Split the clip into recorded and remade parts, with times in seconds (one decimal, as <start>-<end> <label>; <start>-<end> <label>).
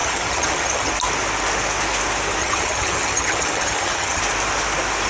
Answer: 0.0-0.9 remade; 0.9-2.4 recorded; 2.4-4.2 remade; 4.2-5.1 recorded